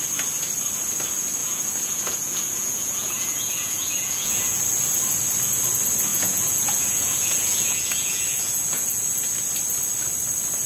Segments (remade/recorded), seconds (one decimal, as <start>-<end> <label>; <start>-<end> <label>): 0.0-1.4 recorded; 1.4-4.6 remade; 4.6-6.1 recorded; 6.1-9.3 remade; 9.3-10.7 recorded